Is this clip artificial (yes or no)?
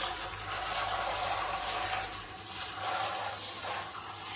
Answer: no